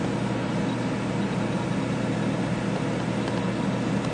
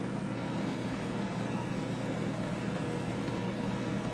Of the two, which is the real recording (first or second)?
first